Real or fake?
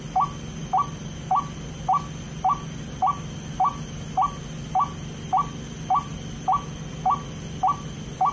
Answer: real